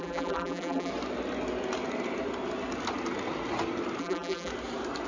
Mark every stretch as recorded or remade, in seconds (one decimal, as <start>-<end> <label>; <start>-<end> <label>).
0.0-0.9 remade; 0.9-4.0 recorded; 4.0-4.5 remade; 4.5-5.1 recorded